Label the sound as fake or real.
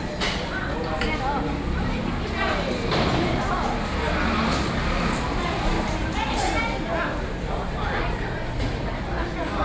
real